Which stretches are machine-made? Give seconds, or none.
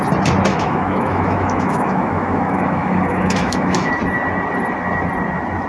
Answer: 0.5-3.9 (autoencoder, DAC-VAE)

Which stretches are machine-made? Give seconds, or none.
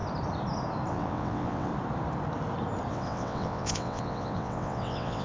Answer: 0.9-1.7 (vocoder, WaveNeXt); 2.9-5.2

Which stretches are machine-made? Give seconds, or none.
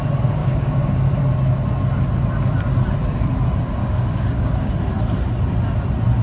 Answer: 0.4-1.2 (codec, DAC); 3.8-4.7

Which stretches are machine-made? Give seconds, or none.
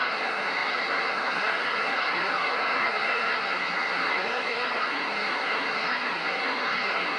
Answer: 0.0-7.2 (codec, SNAC)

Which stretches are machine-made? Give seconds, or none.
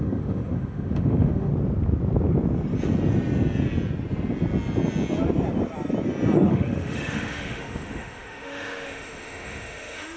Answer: 0.0-1.5 (autoencoder, DAC-VAE); 6.5-10.2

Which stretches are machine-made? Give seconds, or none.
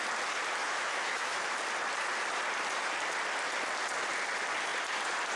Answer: 0.6-1.6 (autoencoder, DAC-VAE)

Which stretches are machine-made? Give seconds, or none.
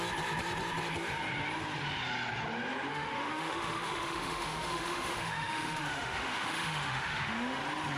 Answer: 2.9-7.6 (autoencoder, DAC-VAE)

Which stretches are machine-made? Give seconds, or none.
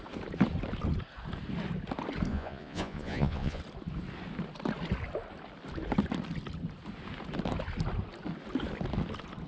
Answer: 2.3-3.6 (vocoder, Vocos)